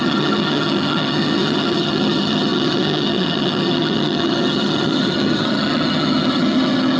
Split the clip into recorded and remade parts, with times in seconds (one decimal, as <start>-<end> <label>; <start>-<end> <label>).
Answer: 0.0-7.0 remade

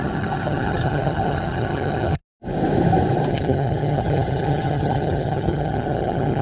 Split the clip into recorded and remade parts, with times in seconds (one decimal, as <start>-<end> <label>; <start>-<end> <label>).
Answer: 0.0-2.2 remade; 2.2-3.3 recorded; 3.3-6.4 remade

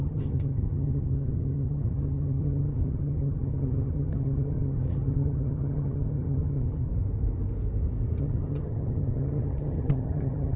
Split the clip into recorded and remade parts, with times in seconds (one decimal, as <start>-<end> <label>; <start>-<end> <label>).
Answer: 0.0-6.9 remade; 6.9-8.2 recorded; 8.2-10.6 remade